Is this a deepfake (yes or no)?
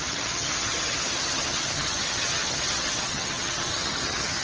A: yes